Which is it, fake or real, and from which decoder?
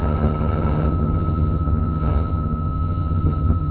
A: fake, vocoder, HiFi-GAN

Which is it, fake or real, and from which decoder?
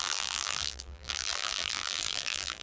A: fake, vocoder, BigVGAN v2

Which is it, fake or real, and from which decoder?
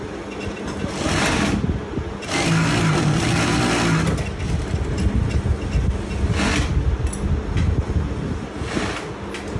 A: real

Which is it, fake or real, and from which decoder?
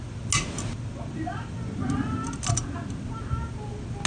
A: real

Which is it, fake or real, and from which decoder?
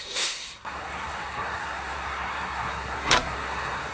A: fake, codec, SNAC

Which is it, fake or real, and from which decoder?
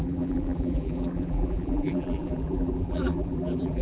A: fake, vocoder, BigVGAN v2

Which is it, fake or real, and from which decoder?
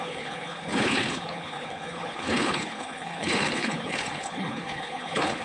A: fake, codec, HILCodec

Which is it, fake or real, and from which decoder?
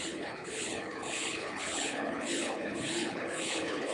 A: fake, codec, HILCodec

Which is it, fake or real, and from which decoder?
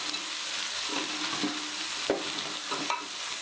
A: real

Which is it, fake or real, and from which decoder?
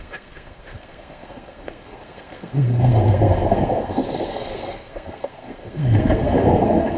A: fake, codec, SNAC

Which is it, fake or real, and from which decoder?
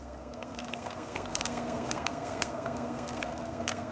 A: fake, codec, SNAC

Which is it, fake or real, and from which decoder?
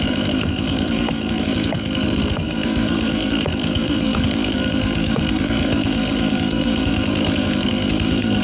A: fake, codec, SNAC